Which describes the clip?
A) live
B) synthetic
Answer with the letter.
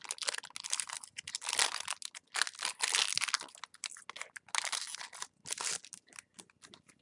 A